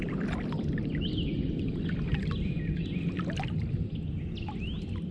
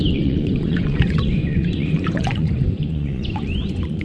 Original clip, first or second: first